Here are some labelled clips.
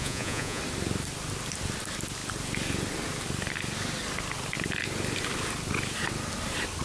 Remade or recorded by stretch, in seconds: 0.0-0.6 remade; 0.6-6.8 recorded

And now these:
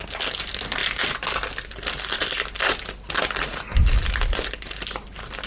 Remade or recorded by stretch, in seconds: 0.0-5.5 recorded

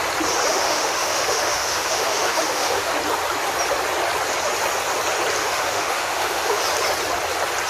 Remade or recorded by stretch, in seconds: 0.0-0.5 recorded; 0.5-2.9 remade; 2.9-5.4 recorded; 5.4-6.6 remade; 6.6-7.7 recorded

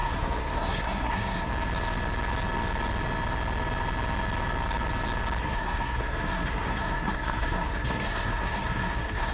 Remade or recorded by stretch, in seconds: 0.0-1.5 remade; 1.5-5.4 recorded; 5.4-9.3 remade

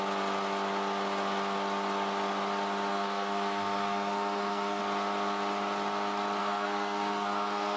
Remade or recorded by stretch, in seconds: 0.0-2.9 recorded; 2.9-4.8 remade; 4.8-6.4 recorded; 6.4-7.8 remade